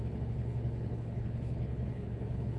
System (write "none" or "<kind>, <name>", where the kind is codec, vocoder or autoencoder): codec, HILCodec